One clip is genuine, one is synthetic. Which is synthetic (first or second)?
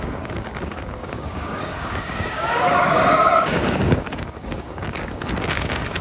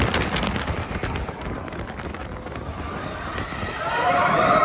first